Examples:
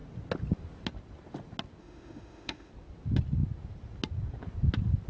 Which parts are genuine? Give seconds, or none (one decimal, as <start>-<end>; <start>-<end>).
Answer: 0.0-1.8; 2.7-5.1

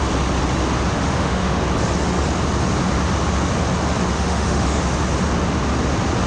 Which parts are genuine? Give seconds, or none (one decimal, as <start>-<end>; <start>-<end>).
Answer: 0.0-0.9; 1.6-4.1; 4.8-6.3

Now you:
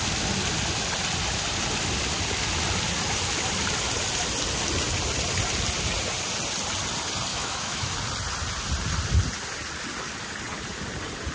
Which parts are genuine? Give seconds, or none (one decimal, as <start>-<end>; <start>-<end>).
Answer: 0.0-7.3; 7.9-11.3